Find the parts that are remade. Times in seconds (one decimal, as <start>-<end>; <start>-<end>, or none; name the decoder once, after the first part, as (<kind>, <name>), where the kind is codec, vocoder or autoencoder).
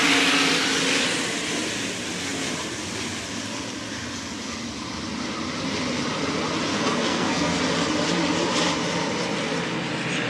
6.7-7.6 (codec, SNAC)